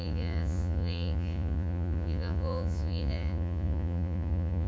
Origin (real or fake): fake